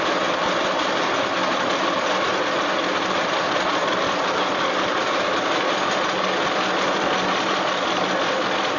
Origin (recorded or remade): recorded